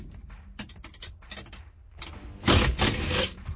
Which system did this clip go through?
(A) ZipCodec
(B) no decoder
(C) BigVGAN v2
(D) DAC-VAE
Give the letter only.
B